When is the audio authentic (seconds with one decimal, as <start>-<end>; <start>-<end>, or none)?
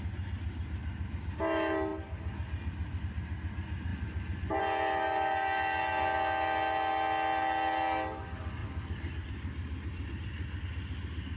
0.0-3.9; 4.6-8.6; 10.6-11.4